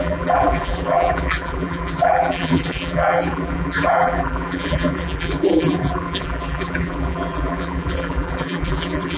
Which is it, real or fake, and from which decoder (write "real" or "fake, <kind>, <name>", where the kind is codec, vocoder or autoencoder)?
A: fake, vocoder, BigVGAN v2